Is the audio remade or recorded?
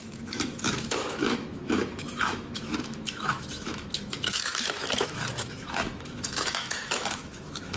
remade